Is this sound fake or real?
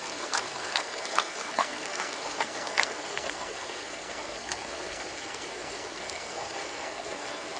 fake